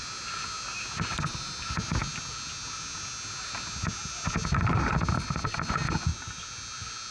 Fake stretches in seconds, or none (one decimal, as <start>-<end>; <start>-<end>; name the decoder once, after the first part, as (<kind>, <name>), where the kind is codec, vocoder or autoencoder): none